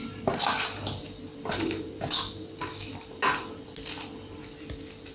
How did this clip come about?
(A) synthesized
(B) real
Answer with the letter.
B